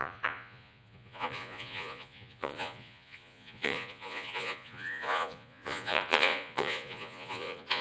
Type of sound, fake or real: fake